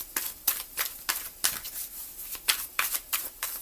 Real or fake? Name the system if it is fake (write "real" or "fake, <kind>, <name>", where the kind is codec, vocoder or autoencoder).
real